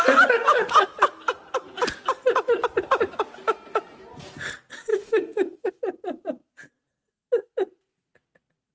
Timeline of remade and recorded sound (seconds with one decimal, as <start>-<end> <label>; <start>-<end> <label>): 0.0-4.9 recorded; 4.9-5.7 remade; 5.7-8.7 recorded